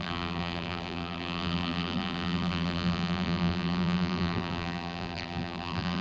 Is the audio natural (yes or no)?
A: no